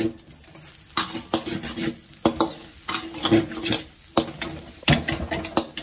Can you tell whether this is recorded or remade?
recorded